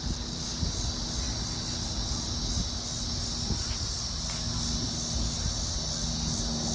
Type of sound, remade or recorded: recorded